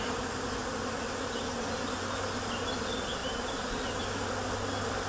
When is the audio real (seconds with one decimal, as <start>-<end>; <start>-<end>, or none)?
0.0-3.2; 4.0-5.1